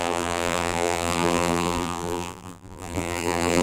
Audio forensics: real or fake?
fake